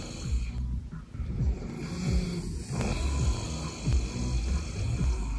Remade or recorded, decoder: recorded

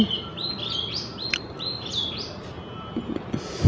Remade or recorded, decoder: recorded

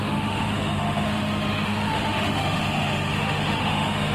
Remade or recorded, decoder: remade, autoencoder, DAC-VAE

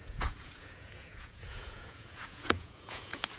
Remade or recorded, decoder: remade, vocoder, Vocos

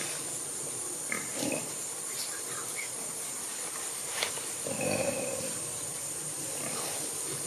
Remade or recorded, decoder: remade, vocoder, BigVGAN v2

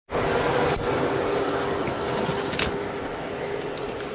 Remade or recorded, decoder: recorded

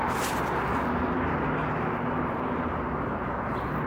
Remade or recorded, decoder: recorded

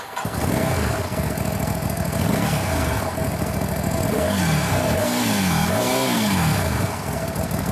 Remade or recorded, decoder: remade, codec, SNAC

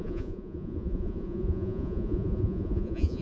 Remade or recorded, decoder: remade, vocoder, Vocos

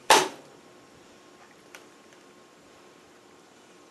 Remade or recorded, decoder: remade, vocoder, BigVGAN v2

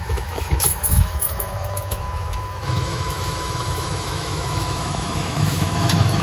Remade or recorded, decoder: remade, autoencoder, DAC-VAE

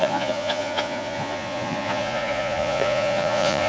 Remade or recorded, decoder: remade, vocoder, Vocos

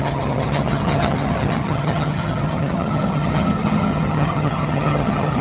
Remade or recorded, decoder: remade, vocoder, HiFi-GAN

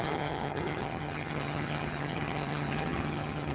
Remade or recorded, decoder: remade, vocoder, HiFi-GAN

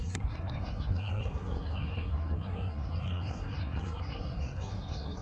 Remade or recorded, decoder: remade, codec, SNAC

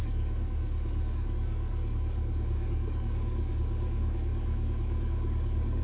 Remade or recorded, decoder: remade, codec, DAC